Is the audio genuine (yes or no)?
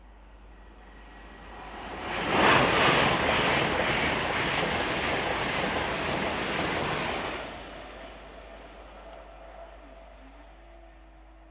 yes